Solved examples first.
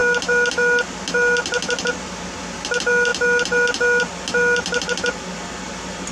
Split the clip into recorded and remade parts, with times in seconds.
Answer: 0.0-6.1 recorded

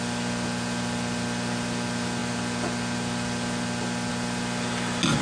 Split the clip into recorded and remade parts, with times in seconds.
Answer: 0.0-5.2 recorded

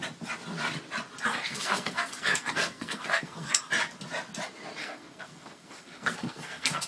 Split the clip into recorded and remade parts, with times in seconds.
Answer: 0.0-1.3 recorded; 1.3-3.6 remade; 3.6-4.8 recorded; 4.8-6.9 remade

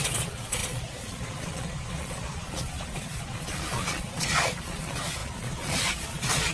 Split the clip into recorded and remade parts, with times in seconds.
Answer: 0.0-6.5 remade

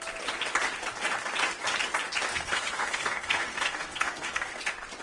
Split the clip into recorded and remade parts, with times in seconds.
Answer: 0.0-2.3 recorded; 2.3-4.6 remade; 4.6-5.0 recorded

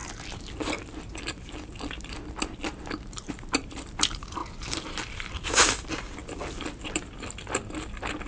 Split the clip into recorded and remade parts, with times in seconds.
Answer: 0.0-3.3 recorded; 3.3-4.4 remade; 4.4-5.3 recorded; 5.3-6.2 remade; 6.2-8.3 recorded

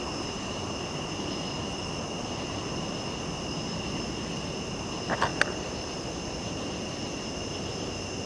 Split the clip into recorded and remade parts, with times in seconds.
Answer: 0.0-5.3 recorded; 5.3-5.9 remade; 5.9-8.3 recorded

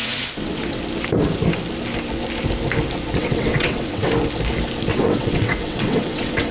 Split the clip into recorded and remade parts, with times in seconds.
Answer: 0.0-0.8 remade; 0.8-3.2 recorded; 3.2-4.1 remade; 4.1-4.9 recorded; 4.9-6.5 remade